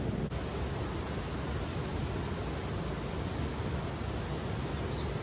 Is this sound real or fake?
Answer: real